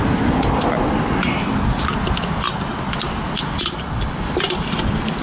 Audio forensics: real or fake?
real